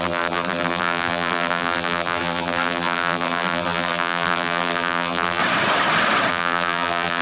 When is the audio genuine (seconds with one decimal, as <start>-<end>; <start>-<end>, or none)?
5.4-6.3